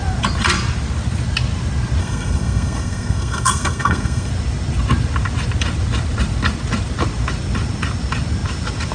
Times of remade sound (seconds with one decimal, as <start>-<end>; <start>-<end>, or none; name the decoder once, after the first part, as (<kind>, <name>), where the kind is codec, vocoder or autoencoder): 2.0-4.3 (codec, SNAC)